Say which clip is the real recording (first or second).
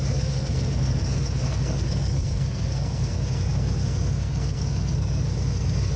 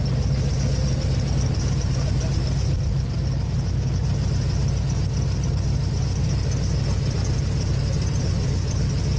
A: second